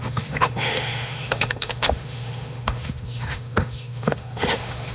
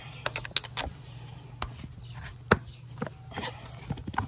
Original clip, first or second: second